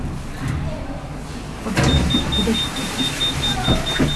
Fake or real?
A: real